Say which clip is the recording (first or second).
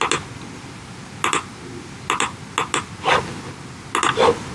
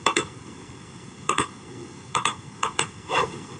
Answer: first